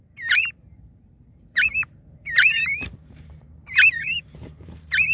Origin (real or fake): fake